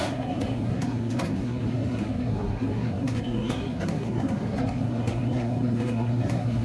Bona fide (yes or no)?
no